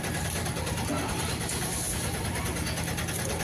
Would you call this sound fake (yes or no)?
no